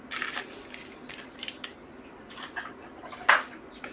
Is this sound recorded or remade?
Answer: recorded